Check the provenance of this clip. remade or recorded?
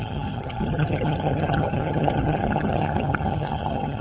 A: remade